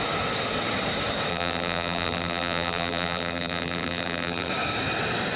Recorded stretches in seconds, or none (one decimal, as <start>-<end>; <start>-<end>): 0.0-1.3; 4.5-5.4